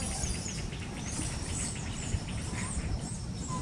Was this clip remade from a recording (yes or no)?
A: yes